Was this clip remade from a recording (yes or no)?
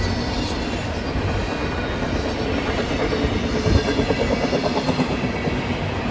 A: no